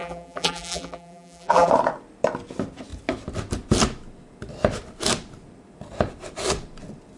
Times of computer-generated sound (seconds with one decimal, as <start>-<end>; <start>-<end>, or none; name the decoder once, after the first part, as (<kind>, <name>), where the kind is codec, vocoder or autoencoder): 0.0-1.7 (vocoder, BigVGAN v2)